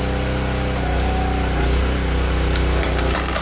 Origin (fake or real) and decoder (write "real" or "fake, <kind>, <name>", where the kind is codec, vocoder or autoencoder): real